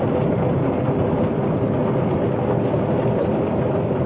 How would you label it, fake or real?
real